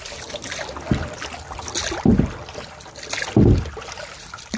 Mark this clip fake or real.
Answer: real